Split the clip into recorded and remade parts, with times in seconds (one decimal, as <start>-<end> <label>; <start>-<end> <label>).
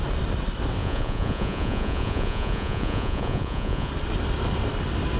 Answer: 0.0-0.8 recorded; 0.8-3.9 remade; 3.9-5.2 recorded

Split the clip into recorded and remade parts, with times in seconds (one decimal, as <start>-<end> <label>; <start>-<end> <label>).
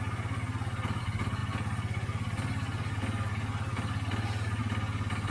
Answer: 0.0-5.3 recorded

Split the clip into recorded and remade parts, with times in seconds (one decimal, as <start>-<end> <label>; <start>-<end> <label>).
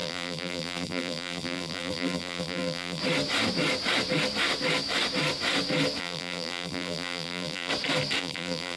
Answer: 0.0-3.0 remade; 3.0-6.0 recorded; 6.0-7.7 remade; 7.7-8.2 recorded; 8.2-8.8 remade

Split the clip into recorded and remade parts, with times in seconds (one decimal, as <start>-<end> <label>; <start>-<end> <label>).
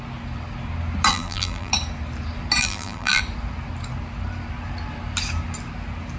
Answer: 0.0-1.1 recorded; 1.1-1.7 remade; 1.7-2.6 recorded; 2.6-3.2 remade; 3.2-6.2 recorded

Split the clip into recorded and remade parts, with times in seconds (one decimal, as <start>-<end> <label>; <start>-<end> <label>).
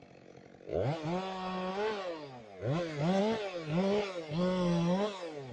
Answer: 0.0-5.5 recorded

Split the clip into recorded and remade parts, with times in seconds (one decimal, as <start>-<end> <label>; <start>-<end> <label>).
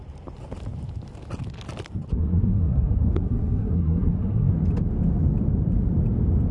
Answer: 0.0-2.1 recorded; 2.1-4.5 remade; 4.5-6.5 recorded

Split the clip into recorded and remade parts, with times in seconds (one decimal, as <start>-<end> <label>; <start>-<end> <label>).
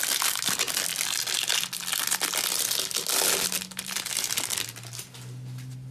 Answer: 0.0-5.9 recorded